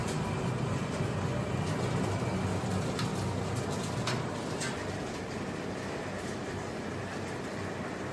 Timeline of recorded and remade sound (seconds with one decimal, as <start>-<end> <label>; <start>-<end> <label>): 0.0-8.1 recorded